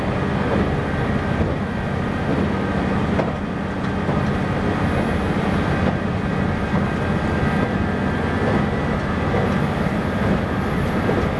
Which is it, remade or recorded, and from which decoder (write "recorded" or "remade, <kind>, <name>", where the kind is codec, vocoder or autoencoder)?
recorded